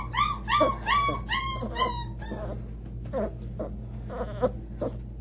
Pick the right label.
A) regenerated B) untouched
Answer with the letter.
B